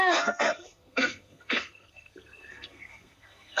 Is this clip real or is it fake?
fake